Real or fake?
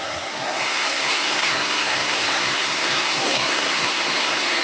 fake